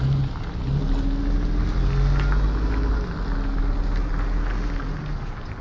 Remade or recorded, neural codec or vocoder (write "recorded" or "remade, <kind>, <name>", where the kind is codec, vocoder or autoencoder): recorded